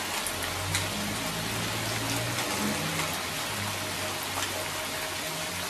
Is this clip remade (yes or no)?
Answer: no